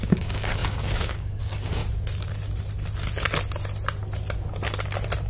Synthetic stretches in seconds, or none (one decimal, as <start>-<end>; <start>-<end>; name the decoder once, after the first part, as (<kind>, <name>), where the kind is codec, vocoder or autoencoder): 0.0-1.8 (codec, DAC)